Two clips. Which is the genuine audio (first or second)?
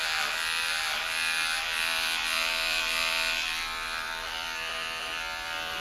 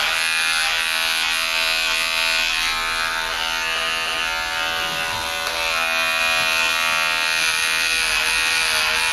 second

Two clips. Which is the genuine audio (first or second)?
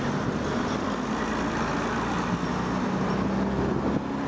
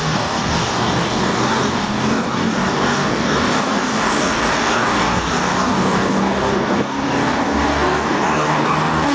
first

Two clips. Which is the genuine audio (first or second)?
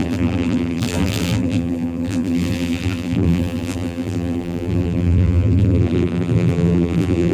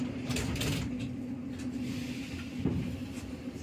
second